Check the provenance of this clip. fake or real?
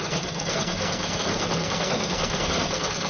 fake